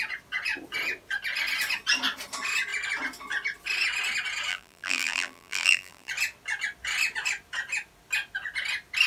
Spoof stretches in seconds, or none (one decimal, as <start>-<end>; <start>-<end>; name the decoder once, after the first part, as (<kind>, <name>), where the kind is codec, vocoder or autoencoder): 4.5-6.1 (vocoder, BigVGAN v2)